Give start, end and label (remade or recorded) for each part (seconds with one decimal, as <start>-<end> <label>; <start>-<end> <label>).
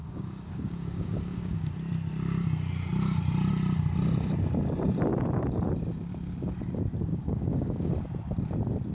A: 0.0-1.7 remade; 1.7-7.1 recorded; 7.1-7.9 remade; 7.9-8.9 recorded